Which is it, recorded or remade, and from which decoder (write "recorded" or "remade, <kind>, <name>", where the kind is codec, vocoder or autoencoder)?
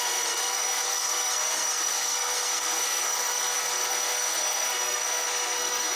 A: remade, codec, SNAC